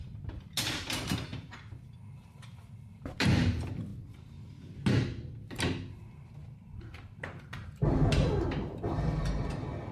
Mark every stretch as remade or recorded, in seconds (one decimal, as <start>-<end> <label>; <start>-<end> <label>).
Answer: 0.0-3.9 recorded; 3.9-4.4 remade; 4.4-6.4 recorded; 6.4-9.5 remade; 9.5-9.9 recorded